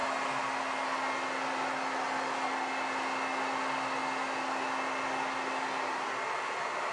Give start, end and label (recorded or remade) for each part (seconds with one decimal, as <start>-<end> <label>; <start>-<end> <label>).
0.0-6.9 recorded